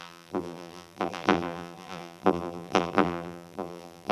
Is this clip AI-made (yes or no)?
yes